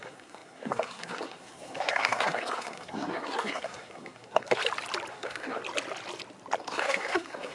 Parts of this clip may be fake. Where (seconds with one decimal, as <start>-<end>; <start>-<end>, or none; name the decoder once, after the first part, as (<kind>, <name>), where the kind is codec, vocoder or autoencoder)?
0.0-4.6 (codec, SNAC); 5.1-5.6; 6.6-7.5